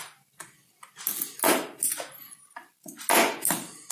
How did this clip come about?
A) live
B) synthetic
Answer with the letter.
A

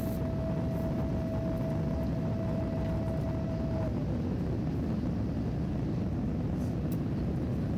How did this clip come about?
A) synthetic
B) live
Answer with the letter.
B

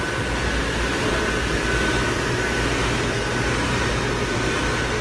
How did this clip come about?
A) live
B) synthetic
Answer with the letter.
A